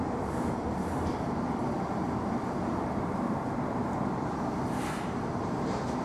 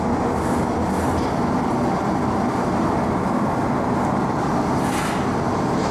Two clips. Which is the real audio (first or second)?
second